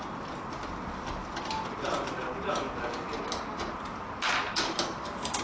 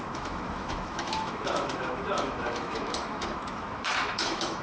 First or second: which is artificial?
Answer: second